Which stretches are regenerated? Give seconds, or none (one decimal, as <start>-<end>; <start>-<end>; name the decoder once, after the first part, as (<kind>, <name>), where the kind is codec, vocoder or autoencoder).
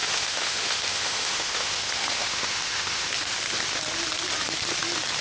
0.0-3.1 (autoencoder, DAC-VAE)